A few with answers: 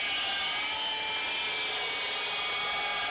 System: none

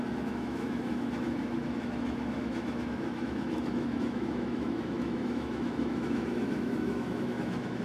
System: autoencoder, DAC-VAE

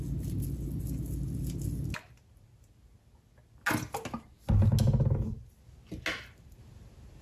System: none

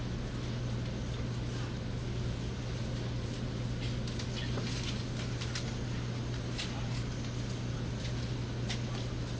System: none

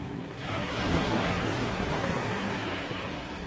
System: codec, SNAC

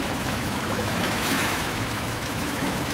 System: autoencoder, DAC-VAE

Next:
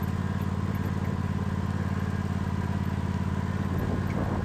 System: none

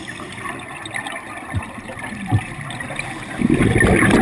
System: none